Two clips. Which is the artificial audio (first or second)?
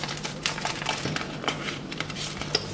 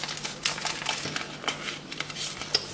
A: first